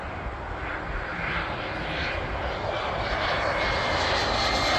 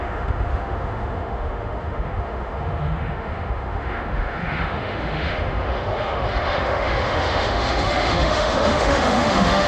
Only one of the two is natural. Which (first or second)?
first